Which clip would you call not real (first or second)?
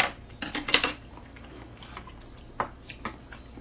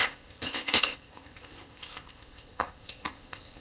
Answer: second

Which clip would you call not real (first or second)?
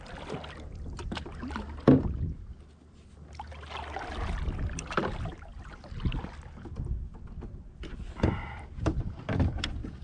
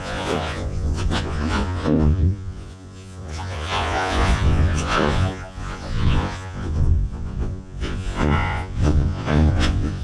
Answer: second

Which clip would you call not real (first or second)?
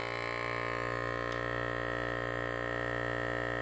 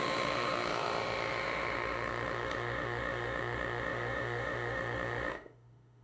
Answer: second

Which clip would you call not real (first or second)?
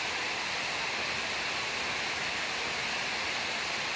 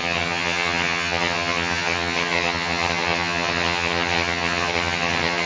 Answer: second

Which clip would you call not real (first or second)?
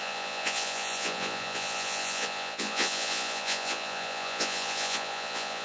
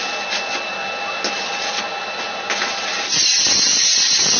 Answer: first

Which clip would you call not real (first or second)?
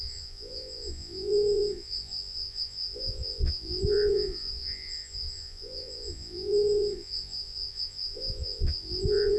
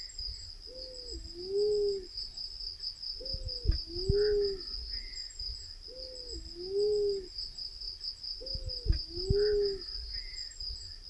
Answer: first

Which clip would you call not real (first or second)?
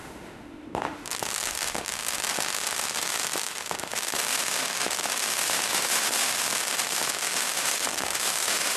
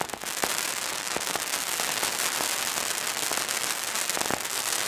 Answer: first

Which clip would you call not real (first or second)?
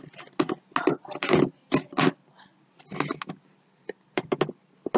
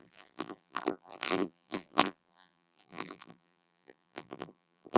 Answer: second